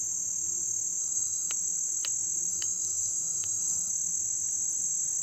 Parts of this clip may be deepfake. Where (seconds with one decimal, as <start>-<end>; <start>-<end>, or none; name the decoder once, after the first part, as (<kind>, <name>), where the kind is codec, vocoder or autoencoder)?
1.0-1.5 (codec, SNAC); 2.5-3.9